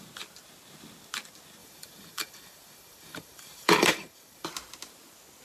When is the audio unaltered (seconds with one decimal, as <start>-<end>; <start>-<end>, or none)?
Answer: 0.0-1.6; 4.5-5.4